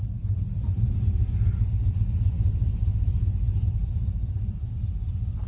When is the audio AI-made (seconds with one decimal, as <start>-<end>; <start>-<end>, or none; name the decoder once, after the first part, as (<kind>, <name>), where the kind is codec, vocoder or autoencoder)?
0.0-1.2 (vocoder, BigVGAN v2); 2.5-5.0